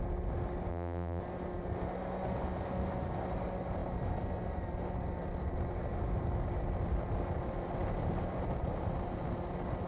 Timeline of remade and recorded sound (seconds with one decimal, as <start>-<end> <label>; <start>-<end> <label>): 0.0-0.7 recorded; 0.7-1.2 remade; 1.2-9.9 recorded